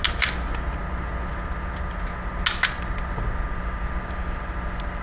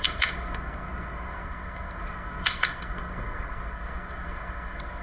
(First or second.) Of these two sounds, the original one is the first